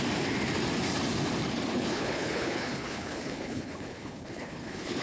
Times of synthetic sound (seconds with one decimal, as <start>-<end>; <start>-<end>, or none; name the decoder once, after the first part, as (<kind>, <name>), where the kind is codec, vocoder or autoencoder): 1.7-5.0 (codec, HILCodec)